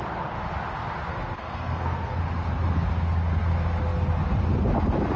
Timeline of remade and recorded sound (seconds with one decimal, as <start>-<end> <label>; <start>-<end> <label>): 0.0-1.1 recorded; 1.1-2.2 remade; 2.2-5.2 recorded